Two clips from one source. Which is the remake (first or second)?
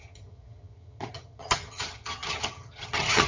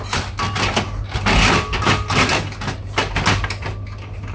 first